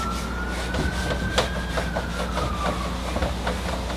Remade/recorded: recorded